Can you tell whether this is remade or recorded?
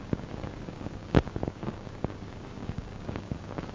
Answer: remade